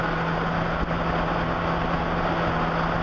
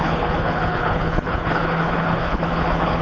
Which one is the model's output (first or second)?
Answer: second